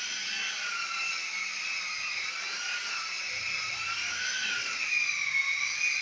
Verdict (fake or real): real